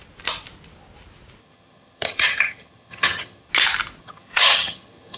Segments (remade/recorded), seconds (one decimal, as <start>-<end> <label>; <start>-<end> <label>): 0.0-1.4 recorded; 1.4-3.5 remade; 3.5-4.0 recorded; 4.0-5.2 remade